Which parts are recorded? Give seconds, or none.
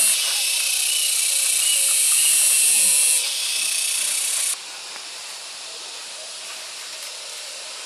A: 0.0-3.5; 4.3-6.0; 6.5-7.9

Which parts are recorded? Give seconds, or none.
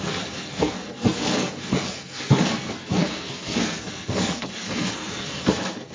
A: none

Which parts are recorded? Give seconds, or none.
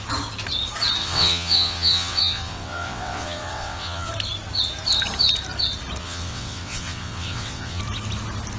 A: 0.0-1.0; 4.1-6.0; 7.8-8.6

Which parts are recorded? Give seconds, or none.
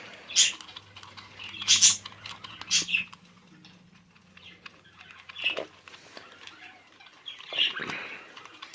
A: 0.0-7.1; 7.9-8.7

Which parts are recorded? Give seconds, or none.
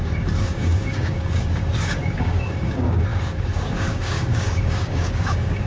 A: none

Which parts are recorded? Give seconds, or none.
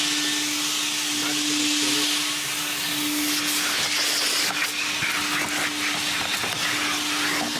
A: 0.0-7.6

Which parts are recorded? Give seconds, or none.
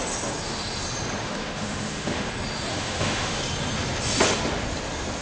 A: 0.0-1.2; 2.3-2.7; 3.4-5.2